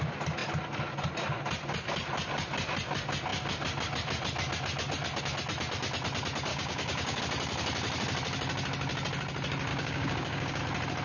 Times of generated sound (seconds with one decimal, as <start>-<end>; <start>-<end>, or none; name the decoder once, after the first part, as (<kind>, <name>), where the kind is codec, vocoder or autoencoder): 6.5-7.2 (codec, DAC); 9.7-10.6